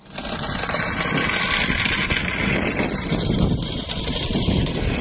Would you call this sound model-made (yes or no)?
no